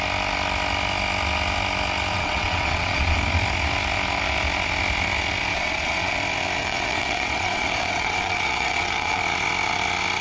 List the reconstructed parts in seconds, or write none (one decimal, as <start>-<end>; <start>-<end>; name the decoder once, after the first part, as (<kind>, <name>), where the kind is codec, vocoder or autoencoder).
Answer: 2.1-3.2 (vocoder, WaveNeXt); 5.5-6.1; 6.6-9.2

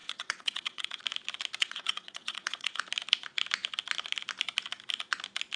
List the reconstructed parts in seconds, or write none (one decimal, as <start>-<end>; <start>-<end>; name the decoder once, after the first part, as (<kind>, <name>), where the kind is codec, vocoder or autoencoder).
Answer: 0.0-1.0 (vocoder, WaveNeXt); 1.6-2.8

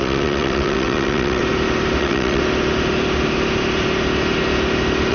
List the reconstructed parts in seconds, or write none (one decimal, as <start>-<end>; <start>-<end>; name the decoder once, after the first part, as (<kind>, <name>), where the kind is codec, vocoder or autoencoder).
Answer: 0.0-1.4 (vocoder, WaveNeXt); 2.0-2.4

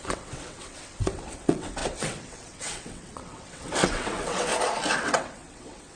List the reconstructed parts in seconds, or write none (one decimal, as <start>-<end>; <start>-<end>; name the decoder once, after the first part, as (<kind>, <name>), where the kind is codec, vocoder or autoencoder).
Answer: 0.0-4.5 (vocoder, WaveNeXt); 5.0-6.0

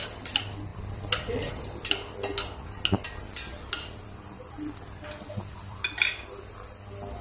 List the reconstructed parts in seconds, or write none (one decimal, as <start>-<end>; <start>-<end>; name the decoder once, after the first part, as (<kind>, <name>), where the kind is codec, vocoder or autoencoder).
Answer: none

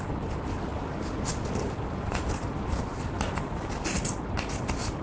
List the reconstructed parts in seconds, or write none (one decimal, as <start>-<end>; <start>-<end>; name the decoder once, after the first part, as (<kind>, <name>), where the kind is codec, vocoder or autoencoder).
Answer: none

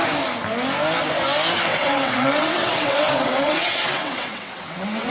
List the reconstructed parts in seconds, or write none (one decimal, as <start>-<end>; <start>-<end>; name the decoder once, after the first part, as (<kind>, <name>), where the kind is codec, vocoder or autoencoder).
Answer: 1.7-5.1 (vocoder, WaveNeXt)

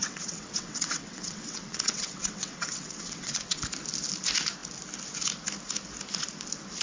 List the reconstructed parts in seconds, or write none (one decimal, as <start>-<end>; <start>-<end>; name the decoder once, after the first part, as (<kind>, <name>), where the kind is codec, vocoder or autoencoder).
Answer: 0.0-3.6 (vocoder, WaveNeXt)